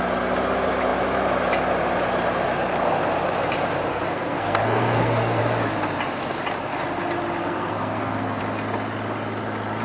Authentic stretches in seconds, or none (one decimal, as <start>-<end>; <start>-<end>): 0.0-3.9; 5.4-7.4; 8.4-9.8